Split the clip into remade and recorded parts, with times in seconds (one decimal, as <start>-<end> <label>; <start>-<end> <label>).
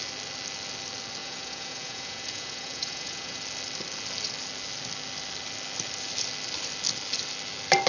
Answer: 0.0-1.2 recorded; 1.2-3.4 remade; 3.4-7.9 recorded